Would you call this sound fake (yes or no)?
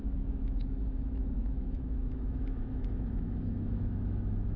yes